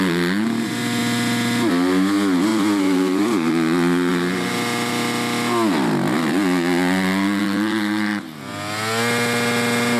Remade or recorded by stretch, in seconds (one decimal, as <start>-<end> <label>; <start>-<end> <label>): 0.0-2.5 recorded; 2.5-3.5 remade; 3.5-7.4 recorded; 7.4-8.2 remade; 8.2-10.0 recorded